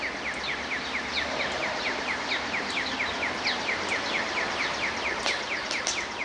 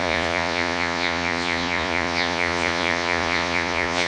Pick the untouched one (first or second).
first